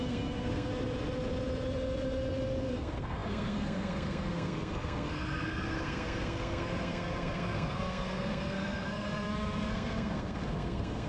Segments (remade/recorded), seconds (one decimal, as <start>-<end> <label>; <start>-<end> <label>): 0.0-0.7 remade; 0.7-2.6 recorded; 2.6-11.1 remade